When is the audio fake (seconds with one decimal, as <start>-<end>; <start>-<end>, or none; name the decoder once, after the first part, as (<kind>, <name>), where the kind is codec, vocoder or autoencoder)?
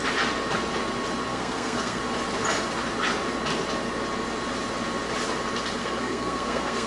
1.3-2.0 (codec, SNAC); 5.8-6.9